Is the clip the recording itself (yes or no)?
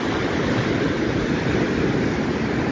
yes